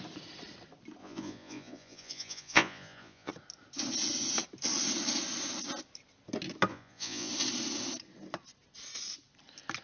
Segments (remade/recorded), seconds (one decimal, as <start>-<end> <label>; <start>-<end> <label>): 0.0-1.0 recorded; 1.0-3.3 remade; 3.3-6.7 recorded; 6.7-7.3 remade; 7.3-9.8 recorded